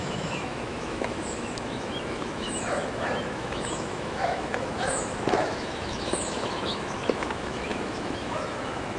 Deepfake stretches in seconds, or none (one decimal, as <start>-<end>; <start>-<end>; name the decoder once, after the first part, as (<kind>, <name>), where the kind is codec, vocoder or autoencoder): 0.0-9.0 (autoencoder, DAC-VAE)